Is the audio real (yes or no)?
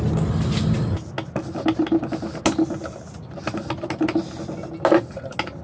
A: yes